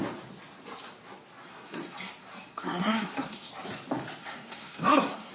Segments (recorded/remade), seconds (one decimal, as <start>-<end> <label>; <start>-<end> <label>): 0.0-1.5 recorded; 1.5-2.1 remade; 2.1-2.5 recorded; 2.5-3.5 remade; 3.5-4.2 recorded; 4.2-5.3 remade